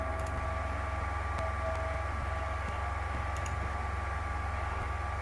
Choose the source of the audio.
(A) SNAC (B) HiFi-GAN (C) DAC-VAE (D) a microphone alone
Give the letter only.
D